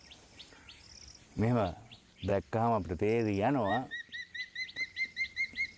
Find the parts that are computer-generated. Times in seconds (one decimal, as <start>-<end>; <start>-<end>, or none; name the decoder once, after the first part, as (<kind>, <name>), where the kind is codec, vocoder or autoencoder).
none